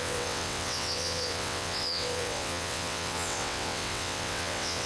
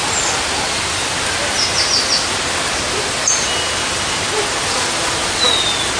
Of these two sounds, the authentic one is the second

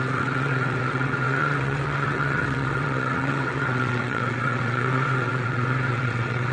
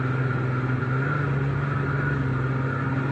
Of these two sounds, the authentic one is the second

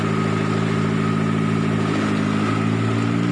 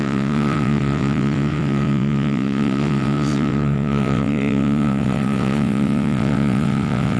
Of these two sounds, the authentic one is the first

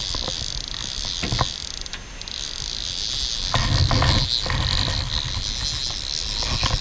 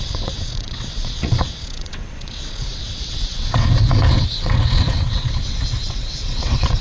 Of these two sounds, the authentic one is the first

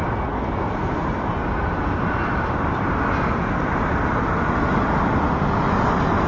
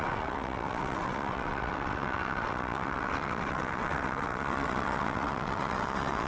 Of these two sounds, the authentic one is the first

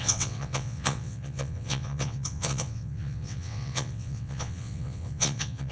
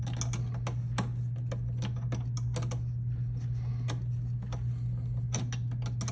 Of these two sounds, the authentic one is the second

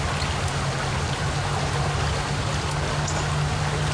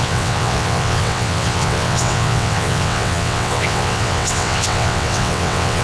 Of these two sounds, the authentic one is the first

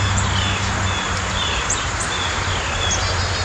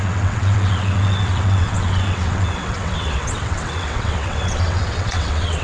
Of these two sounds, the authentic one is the first